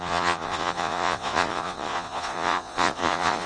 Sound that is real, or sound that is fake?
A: fake